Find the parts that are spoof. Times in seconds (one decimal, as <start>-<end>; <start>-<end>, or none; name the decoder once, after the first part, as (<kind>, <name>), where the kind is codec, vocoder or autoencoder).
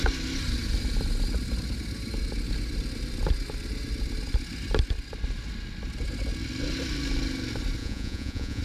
7.8-8.6 (vocoder, Vocos)